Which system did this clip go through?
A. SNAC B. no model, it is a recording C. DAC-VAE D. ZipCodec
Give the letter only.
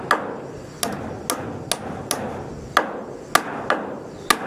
B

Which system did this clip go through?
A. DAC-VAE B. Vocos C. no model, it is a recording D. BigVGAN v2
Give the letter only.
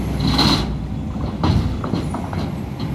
C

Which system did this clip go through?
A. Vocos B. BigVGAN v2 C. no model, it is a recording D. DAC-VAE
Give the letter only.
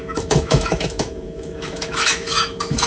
D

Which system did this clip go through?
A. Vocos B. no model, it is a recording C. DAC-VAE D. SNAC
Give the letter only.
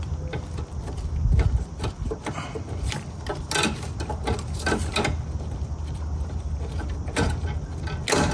B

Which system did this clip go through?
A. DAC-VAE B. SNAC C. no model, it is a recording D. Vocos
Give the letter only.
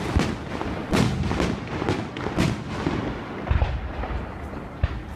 C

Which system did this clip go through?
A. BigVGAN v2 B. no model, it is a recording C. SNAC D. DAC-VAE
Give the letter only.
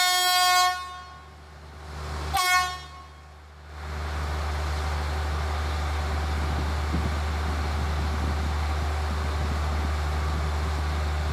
B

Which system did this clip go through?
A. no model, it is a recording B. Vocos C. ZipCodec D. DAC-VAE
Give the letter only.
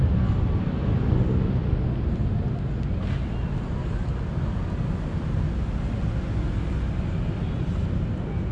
A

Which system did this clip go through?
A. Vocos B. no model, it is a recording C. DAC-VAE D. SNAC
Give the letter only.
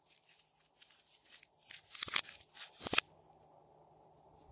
B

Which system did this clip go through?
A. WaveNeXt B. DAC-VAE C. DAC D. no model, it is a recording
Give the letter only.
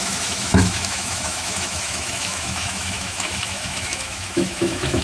B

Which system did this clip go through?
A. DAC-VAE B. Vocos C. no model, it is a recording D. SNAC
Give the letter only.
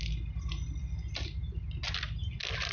C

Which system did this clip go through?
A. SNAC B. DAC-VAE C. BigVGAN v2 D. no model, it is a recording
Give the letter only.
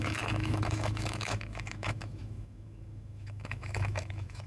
B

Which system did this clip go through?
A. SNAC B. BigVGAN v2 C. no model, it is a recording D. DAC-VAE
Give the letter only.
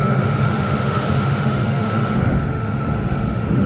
D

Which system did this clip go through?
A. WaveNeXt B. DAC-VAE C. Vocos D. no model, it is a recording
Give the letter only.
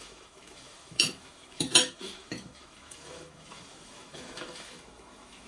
B